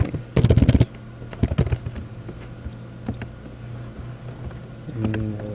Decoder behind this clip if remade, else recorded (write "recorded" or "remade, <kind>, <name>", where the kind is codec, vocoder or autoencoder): recorded